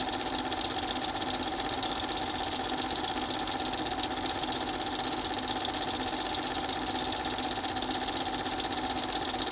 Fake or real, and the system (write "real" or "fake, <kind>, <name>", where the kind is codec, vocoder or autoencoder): real